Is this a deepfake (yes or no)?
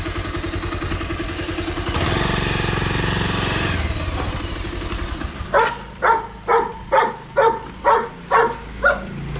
no